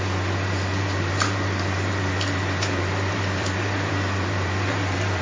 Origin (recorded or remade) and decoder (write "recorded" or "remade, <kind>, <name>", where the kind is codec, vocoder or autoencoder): remade, vocoder, BigVGAN v2